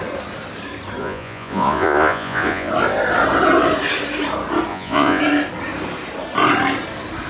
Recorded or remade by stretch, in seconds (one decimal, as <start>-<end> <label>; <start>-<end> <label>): 0.0-1.0 recorded; 1.0-2.7 remade; 2.7-4.7 recorded; 4.7-5.2 remade; 5.2-7.3 recorded